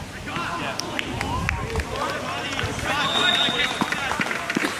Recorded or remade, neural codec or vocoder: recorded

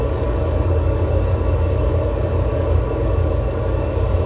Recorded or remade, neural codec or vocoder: remade, codec, DAC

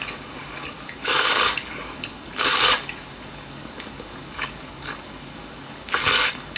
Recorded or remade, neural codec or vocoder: remade, codec, DAC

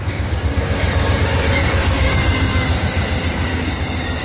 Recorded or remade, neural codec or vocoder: remade, codec, DAC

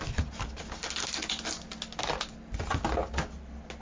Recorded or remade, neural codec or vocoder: recorded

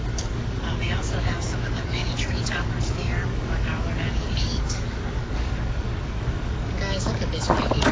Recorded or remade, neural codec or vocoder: remade, codec, DAC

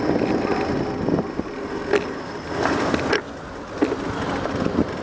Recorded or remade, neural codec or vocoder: recorded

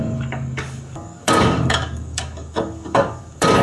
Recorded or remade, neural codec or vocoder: remade, codec, DAC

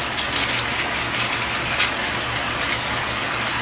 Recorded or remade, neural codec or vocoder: remade, codec, DAC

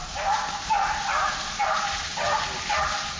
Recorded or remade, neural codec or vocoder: recorded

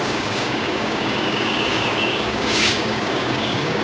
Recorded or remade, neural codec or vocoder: remade, codec, DAC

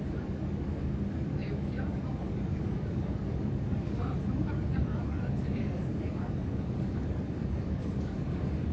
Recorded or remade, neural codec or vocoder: remade, codec, DAC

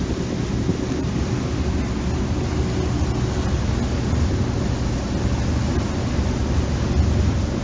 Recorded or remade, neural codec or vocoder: recorded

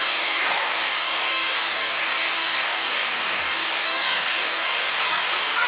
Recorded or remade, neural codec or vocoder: remade, codec, DAC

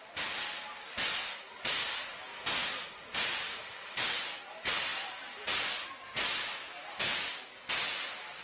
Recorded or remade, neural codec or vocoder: recorded